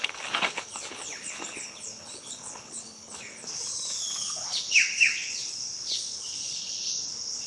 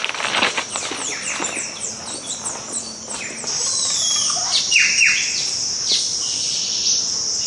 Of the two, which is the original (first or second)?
second